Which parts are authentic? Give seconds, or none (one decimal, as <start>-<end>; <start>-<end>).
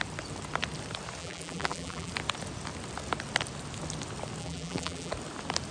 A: 0.0-1.2; 2.1-4.4; 5.1-5.7